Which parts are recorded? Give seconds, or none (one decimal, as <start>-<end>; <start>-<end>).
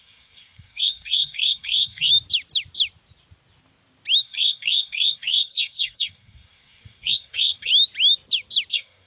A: 2.1-4.2; 7.7-8.7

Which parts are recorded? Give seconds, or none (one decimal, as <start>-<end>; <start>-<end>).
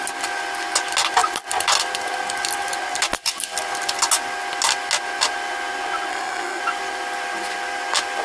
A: 0.0-6.1; 6.6-8.2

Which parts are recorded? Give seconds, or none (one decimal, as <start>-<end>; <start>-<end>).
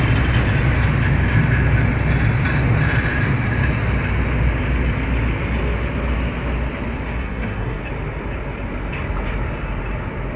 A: 0.0-7.2; 7.8-10.4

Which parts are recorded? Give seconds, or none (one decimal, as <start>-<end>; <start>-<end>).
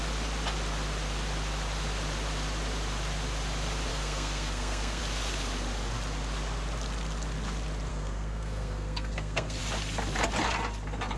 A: 0.0-3.9; 5.0-7.9; 9.6-11.2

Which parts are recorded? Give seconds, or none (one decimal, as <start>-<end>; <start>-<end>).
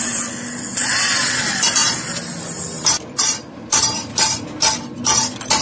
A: 0.0-5.6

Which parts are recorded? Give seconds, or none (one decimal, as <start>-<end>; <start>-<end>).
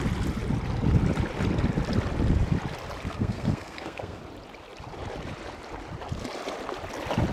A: 0.0-3.1; 4.2-7.3